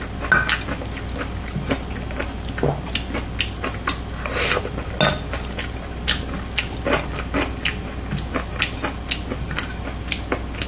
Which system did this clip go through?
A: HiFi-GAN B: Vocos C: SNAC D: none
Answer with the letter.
D